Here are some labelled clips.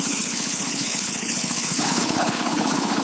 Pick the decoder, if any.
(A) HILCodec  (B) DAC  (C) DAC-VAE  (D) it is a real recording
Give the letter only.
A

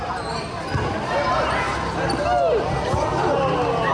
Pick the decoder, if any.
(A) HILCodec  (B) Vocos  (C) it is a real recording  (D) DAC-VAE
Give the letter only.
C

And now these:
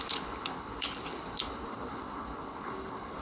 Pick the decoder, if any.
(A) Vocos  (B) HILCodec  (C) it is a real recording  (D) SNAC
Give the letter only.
B